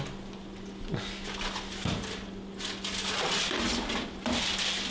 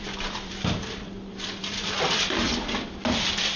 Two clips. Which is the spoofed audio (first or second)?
second